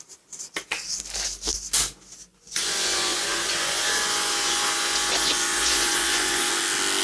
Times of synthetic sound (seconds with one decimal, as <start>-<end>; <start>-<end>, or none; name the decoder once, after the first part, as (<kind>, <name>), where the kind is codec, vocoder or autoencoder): 2.3-6.5 (vocoder, Vocos)